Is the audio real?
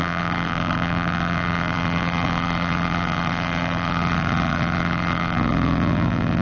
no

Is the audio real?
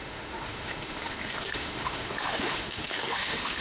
no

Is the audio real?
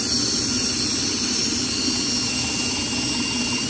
yes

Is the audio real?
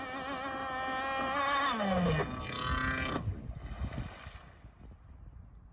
yes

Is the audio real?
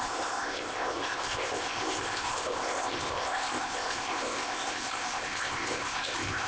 no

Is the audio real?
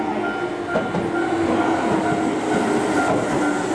yes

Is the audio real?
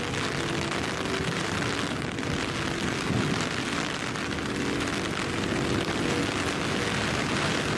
yes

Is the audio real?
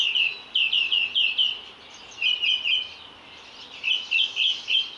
yes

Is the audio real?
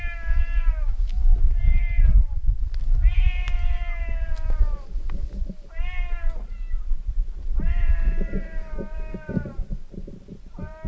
no